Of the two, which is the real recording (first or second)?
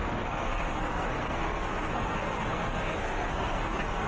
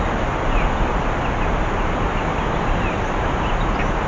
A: second